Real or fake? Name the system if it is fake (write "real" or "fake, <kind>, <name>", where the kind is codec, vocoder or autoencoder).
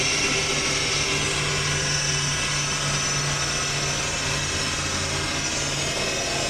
real